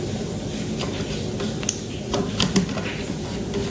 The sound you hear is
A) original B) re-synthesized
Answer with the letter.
A